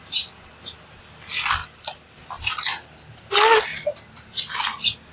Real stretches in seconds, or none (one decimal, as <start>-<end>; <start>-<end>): 0.0-5.1